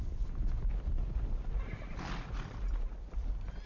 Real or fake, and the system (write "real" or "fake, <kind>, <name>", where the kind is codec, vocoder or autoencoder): real